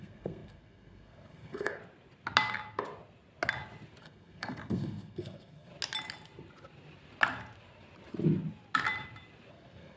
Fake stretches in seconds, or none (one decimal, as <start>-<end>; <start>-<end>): 0.0-1.8; 4.0-5.7; 9.5-10.0